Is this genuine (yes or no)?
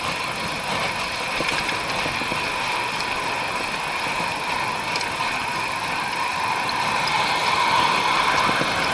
yes